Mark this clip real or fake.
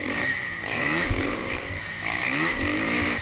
fake